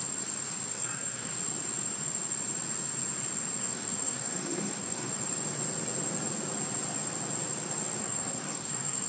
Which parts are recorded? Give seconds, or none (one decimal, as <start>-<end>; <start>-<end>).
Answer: 0.0-0.7; 1.3-3.6; 5.1-8.0